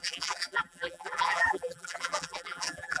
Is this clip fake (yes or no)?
yes